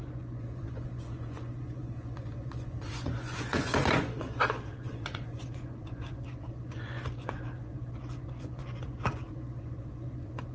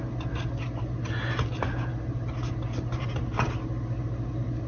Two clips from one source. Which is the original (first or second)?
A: second